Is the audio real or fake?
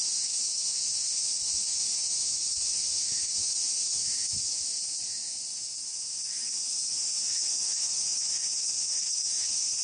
fake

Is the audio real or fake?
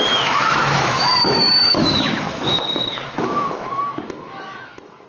fake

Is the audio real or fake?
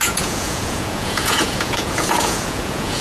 fake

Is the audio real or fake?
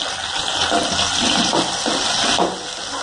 real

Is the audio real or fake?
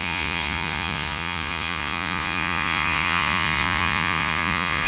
fake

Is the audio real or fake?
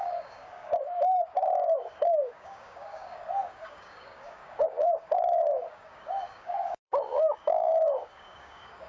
fake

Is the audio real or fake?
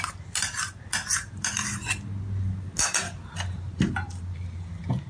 real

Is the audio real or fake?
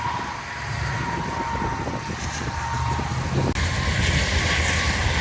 real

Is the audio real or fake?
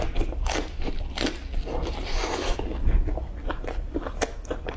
real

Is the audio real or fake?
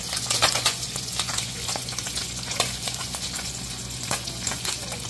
fake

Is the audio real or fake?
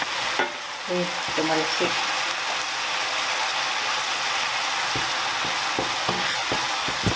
real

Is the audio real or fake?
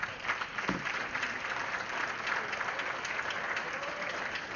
real